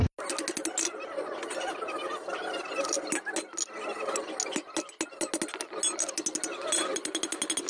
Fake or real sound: real